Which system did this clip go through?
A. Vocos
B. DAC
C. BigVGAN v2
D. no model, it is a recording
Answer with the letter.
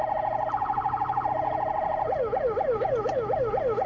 D